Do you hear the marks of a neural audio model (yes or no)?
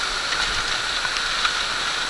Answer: no